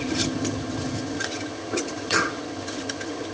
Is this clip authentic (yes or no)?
no